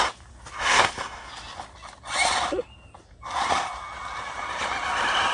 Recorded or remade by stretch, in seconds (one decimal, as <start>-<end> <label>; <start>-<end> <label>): 0.0-0.6 recorded; 0.6-1.3 remade; 1.3-5.3 recorded